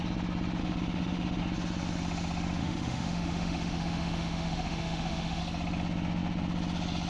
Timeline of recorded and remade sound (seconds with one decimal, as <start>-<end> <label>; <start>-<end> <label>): 0.0-0.6 recorded; 0.6-1.4 remade; 1.4-2.6 recorded; 2.6-5.4 remade; 5.4-7.1 recorded